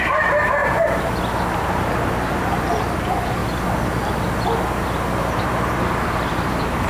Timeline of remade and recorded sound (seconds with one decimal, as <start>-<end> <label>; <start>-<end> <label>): 0.0-0.6 remade; 0.6-1.5 recorded; 1.5-3.4 remade; 3.4-5.3 recorded; 5.3-6.9 remade